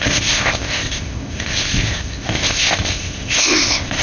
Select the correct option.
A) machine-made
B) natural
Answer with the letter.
A